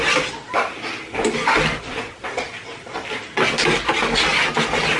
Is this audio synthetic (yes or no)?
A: no